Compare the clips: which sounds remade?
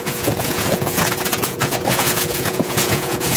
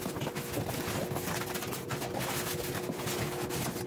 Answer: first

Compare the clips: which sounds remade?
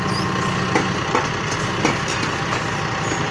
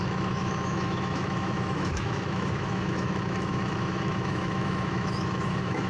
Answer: second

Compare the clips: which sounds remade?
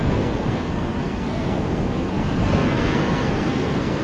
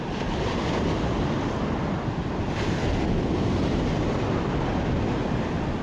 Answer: first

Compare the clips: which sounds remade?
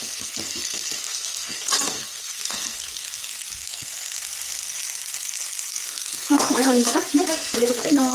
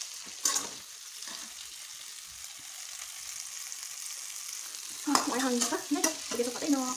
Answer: first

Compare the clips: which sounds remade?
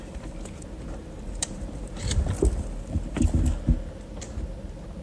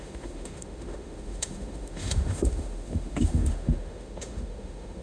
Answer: second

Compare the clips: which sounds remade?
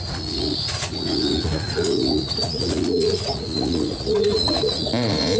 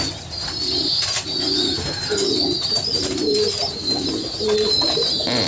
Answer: first